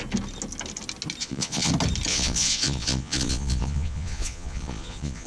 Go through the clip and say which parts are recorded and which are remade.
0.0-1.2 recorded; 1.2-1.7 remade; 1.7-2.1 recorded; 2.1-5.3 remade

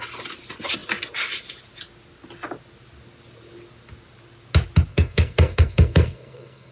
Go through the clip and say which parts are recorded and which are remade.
0.0-4.9 recorded; 4.9-6.7 remade

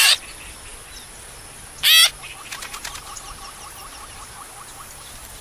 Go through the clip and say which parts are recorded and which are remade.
0.0-5.4 recorded

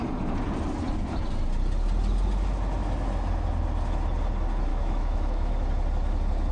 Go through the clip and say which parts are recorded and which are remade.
0.0-4.7 recorded; 4.7-5.5 remade; 5.5-6.5 recorded

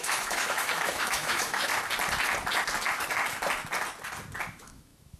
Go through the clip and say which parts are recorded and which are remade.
0.0-1.7 remade; 1.7-4.5 recorded; 4.5-5.2 remade